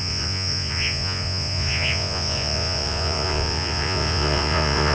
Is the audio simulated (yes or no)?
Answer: yes